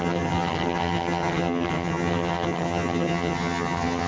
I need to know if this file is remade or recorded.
remade